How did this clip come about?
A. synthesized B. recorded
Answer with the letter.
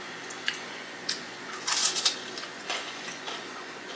A